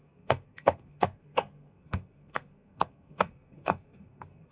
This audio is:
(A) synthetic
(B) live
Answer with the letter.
A